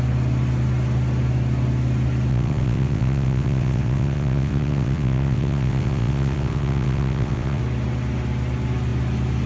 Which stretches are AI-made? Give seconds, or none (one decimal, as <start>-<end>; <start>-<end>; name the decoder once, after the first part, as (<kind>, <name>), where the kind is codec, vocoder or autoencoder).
2.3-7.6 (vocoder, WaveNeXt)